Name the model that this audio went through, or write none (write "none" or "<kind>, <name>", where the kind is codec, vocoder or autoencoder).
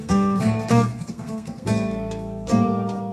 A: codec, SNAC